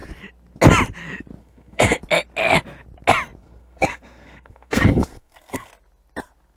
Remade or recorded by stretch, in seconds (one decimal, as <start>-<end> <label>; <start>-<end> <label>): 0.0-1.4 recorded; 1.4-2.0 remade; 2.0-3.4 recorded; 3.4-5.7 remade; 5.7-6.6 recorded